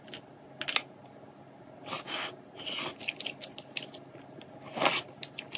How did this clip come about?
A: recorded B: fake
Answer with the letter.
A